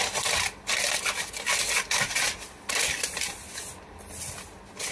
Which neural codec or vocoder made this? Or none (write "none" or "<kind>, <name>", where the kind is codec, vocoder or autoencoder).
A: none